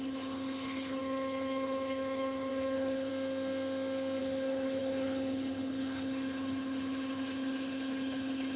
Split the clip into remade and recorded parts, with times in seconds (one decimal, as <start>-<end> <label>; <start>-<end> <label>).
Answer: 0.0-3.1 remade; 3.1-4.2 recorded; 4.2-8.6 remade